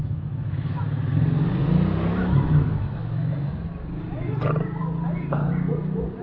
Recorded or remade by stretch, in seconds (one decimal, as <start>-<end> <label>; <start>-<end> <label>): 0.0-1.1 remade; 1.1-2.2 recorded; 2.2-3.5 remade; 3.5-6.2 recorded